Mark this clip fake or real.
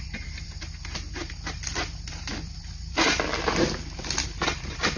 real